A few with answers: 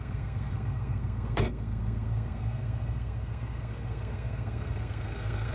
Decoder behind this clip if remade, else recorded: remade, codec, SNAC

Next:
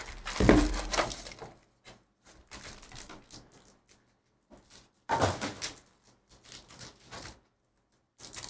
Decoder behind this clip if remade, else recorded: recorded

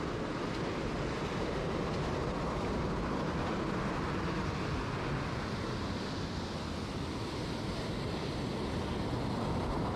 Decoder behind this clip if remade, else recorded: recorded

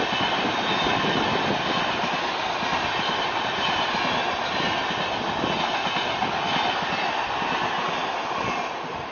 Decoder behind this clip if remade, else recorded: recorded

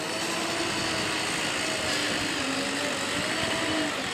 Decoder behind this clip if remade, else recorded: recorded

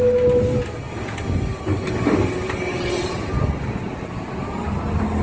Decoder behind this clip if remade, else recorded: recorded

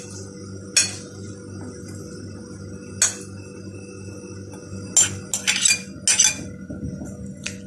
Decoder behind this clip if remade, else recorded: recorded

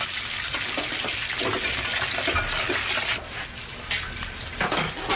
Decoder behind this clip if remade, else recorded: recorded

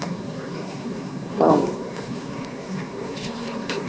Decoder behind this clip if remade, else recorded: remade, codec, SNAC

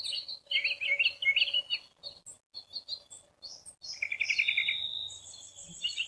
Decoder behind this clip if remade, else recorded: recorded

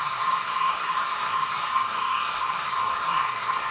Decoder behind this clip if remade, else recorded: remade, codec, SNAC